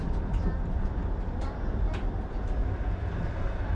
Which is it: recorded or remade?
remade